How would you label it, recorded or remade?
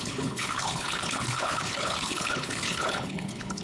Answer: remade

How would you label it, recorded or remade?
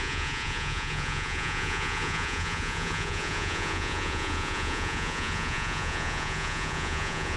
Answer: remade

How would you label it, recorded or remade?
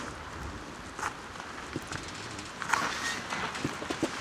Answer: recorded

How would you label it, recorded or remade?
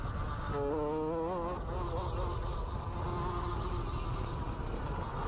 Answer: recorded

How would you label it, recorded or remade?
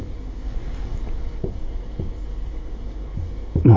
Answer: remade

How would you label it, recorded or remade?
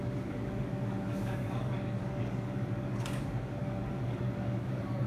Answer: remade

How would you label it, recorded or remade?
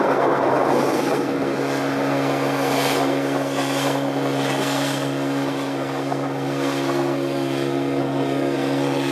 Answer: remade